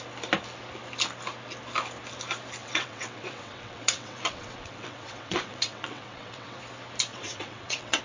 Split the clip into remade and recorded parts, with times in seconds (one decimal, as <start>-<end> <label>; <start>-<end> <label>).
0.0-2.6 recorded; 2.6-6.6 remade; 6.6-7.1 recorded; 7.1-8.0 remade